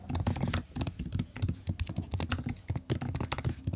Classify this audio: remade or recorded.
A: recorded